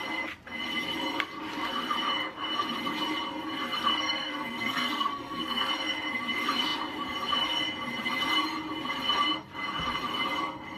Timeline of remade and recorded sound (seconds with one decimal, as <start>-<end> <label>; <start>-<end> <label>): 0.0-3.9 recorded; 3.9-5.7 remade; 5.7-10.8 recorded